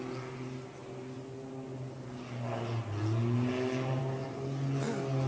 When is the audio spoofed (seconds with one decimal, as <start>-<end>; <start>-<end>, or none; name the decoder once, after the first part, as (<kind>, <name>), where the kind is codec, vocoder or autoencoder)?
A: none